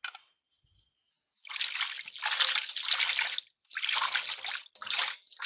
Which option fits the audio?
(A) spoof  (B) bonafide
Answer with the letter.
B